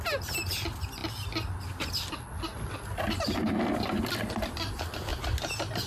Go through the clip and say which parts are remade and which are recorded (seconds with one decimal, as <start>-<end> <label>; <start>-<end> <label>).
0.0-1.0 remade; 1.0-2.7 recorded; 2.7-5.1 remade; 5.1-5.9 recorded